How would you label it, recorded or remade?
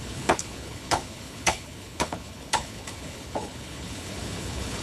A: remade